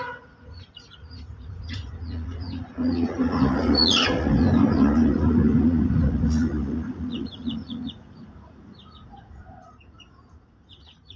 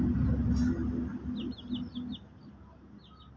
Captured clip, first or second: second